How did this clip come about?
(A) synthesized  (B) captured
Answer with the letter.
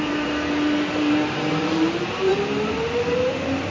A